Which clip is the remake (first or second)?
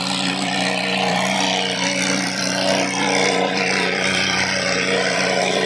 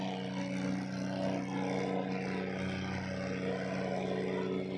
first